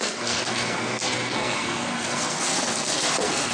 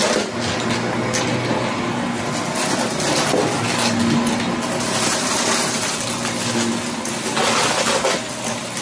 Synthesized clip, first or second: first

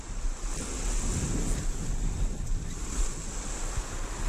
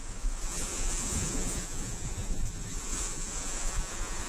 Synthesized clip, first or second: second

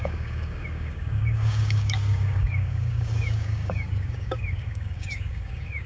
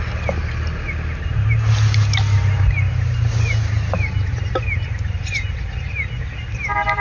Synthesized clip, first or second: first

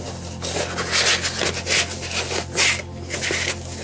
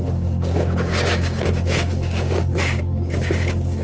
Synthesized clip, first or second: second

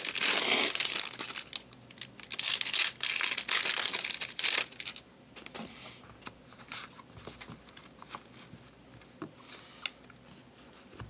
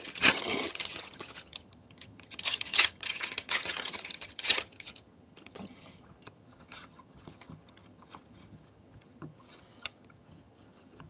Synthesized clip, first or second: second